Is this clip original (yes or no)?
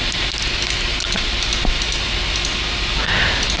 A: yes